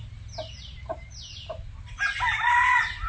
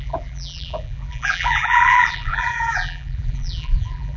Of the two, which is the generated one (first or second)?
second